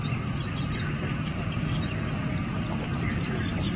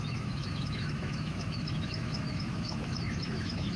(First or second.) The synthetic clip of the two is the second